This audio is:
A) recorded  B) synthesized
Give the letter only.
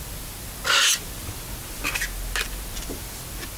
A